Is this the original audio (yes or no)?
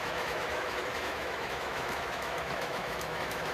no